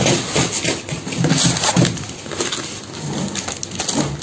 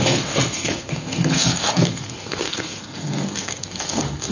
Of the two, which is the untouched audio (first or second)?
first